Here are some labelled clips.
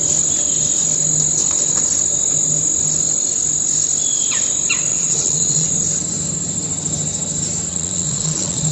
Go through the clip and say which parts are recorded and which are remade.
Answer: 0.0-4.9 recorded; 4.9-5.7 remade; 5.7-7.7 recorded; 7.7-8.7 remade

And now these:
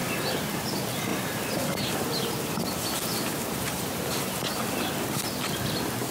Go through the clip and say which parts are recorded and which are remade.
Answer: 0.0-1.1 recorded; 1.1-2.4 remade; 2.4-3.3 recorded; 3.3-4.6 remade; 4.6-6.1 recorded